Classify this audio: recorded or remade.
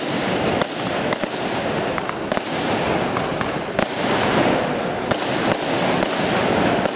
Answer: recorded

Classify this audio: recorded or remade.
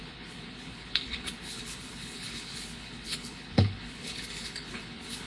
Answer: remade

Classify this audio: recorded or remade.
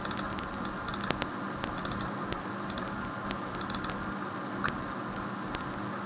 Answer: recorded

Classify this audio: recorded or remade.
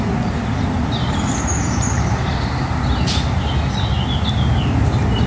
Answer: recorded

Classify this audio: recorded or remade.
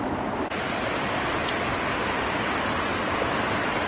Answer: recorded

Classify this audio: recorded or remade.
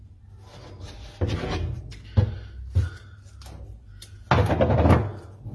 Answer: recorded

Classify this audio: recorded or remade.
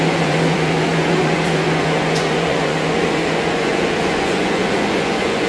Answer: remade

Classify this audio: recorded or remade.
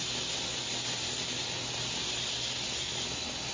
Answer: recorded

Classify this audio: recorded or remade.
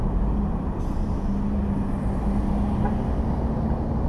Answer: recorded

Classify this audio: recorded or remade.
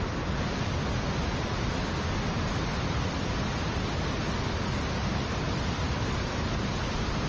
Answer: recorded